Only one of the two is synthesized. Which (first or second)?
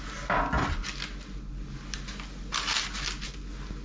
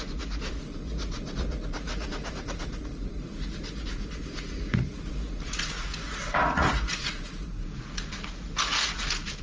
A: second